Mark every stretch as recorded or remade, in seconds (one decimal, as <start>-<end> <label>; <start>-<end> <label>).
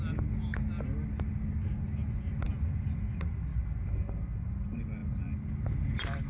0.0-6.3 recorded